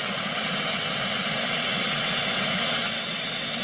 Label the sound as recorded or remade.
remade